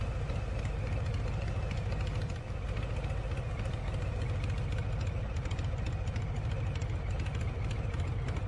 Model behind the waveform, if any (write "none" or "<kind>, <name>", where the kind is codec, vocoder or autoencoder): none